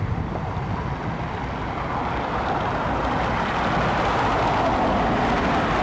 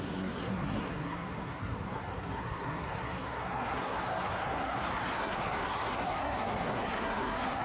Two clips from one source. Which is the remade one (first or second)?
second